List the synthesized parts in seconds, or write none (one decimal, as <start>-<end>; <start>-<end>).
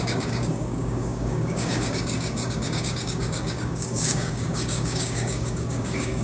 0.0-6.2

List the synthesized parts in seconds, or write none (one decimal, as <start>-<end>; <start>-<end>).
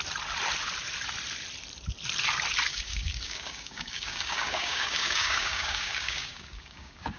2.7-7.2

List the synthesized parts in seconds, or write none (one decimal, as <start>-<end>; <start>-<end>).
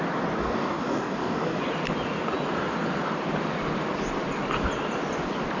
0.4-1.6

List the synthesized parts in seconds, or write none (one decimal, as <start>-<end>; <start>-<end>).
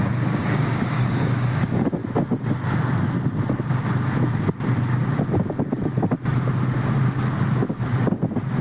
0.0-2.0; 7.0-7.9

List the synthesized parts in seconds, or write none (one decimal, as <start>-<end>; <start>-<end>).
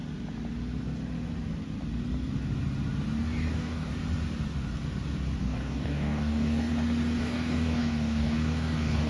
3.5-3.9; 5.4-6.7; 7.2-9.1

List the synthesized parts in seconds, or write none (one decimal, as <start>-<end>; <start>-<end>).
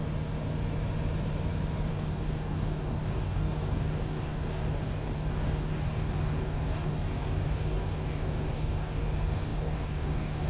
1.9-10.5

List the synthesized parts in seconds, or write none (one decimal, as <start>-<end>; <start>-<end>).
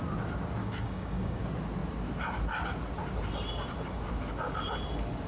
0.6-1.4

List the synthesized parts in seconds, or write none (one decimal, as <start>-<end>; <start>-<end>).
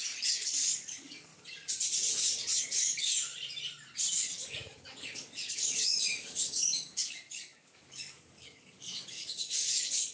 0.0-1.3; 2.6-3.3; 4.1-10.1